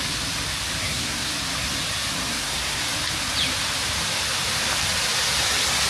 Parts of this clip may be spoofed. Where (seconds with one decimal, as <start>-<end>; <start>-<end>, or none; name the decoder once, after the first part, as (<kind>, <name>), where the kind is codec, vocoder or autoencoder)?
0.8-1.3 (codec, SNAC); 2.3-2.8